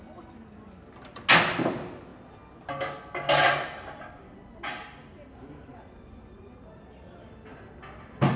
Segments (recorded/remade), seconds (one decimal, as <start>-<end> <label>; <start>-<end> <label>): 0.0-8.4 recorded